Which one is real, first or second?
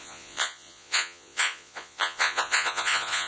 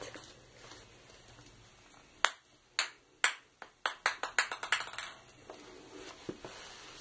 second